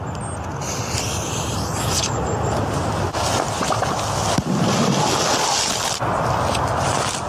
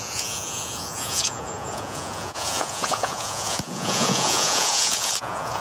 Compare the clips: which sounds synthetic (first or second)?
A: second